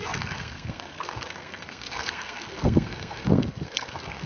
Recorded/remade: remade